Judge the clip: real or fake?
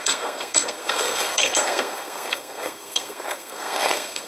fake